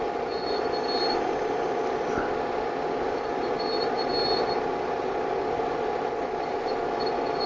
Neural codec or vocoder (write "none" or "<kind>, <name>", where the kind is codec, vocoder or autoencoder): none